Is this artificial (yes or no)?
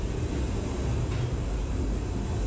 no